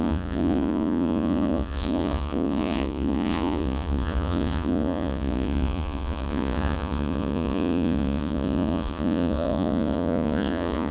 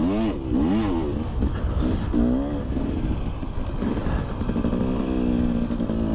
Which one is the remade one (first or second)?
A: first